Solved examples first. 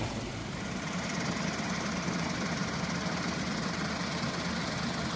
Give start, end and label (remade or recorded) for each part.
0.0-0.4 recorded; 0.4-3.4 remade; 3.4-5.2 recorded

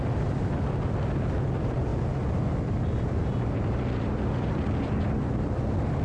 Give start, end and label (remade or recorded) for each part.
0.0-1.9 recorded; 1.9-5.5 remade; 5.5-6.0 recorded

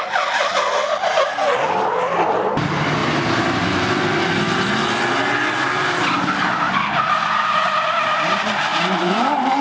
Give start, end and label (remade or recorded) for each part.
0.0-8.7 recorded; 8.7-9.6 remade

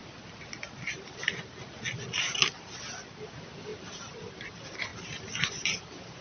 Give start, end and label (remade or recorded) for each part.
0.0-3.2 recorded; 3.2-4.9 remade; 4.9-5.5 recorded; 5.5-6.2 remade

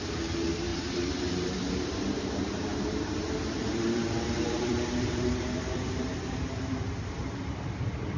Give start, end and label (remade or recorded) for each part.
0.0-8.2 remade

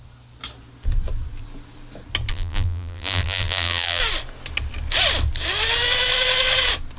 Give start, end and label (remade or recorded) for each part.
0.0-2.3 recorded; 2.3-4.0 remade; 4.0-7.0 recorded

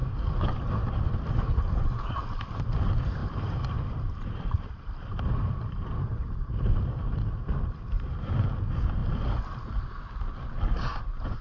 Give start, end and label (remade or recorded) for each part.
0.0-9.0 remade; 9.0-11.0 recorded; 11.0-11.4 remade